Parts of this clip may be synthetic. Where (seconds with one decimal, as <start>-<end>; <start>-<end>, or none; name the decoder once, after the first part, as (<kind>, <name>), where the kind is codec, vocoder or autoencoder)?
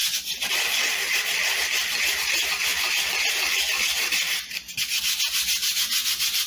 none